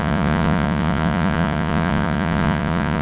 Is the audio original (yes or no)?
no